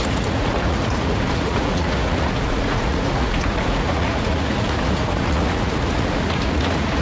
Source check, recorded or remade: remade